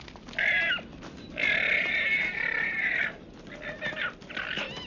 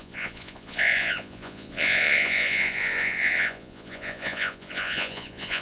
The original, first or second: first